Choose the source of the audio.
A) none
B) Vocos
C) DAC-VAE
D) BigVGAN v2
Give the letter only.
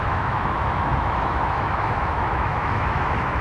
C